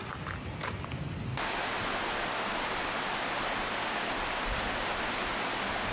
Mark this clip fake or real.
real